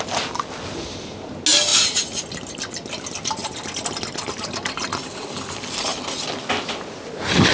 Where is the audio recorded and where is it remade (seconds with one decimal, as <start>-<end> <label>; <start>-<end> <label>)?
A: 0.0-7.5 recorded